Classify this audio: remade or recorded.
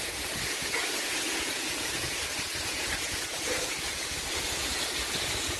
remade